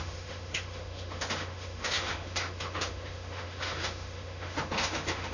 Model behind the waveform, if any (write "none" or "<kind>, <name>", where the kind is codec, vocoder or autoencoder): autoencoder, DAC-VAE